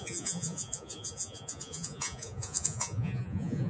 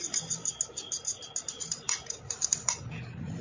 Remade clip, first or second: first